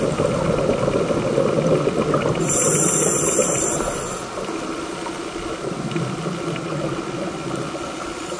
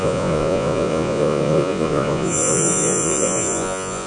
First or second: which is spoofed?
second